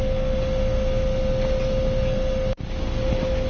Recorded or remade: recorded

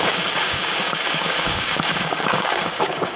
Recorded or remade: remade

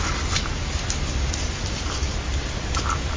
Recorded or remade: recorded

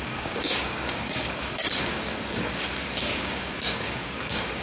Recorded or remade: remade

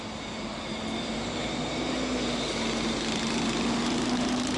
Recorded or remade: recorded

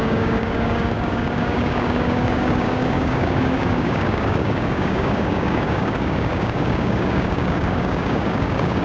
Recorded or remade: remade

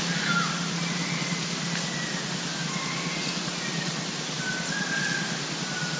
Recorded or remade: recorded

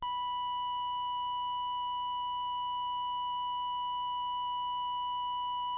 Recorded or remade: recorded